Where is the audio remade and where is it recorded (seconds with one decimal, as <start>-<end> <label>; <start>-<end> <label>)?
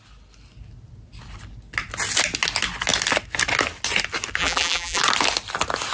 0.0-4.4 recorded; 4.4-5.0 remade; 5.0-5.9 recorded